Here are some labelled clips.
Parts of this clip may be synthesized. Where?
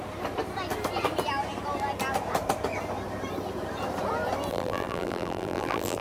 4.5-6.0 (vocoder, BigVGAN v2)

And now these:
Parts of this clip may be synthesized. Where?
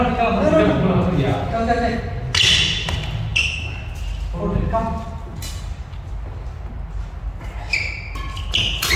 none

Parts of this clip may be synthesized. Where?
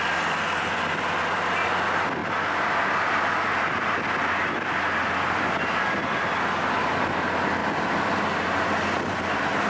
none